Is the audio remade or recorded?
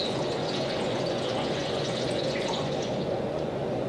remade